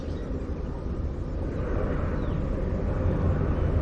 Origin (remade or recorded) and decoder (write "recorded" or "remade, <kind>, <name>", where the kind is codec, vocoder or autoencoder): recorded